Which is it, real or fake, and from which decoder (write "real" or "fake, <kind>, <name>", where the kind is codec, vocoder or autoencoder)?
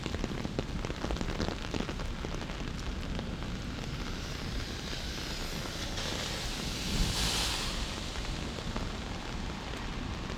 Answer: real